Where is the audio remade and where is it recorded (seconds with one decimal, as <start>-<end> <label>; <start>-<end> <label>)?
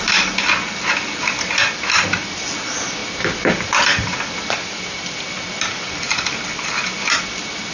0.0-7.7 recorded